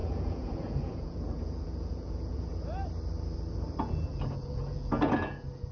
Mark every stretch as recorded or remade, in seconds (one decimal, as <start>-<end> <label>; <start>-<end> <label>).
0.0-2.5 remade; 2.5-3.8 recorded; 3.8-5.7 remade